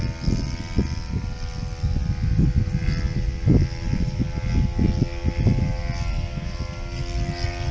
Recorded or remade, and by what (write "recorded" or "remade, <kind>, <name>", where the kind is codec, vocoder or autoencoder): recorded